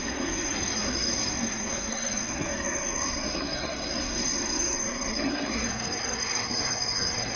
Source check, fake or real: fake